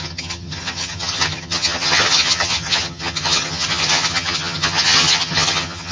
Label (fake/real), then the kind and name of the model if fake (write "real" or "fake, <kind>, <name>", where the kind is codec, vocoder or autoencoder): fake, vocoder, HiFi-GAN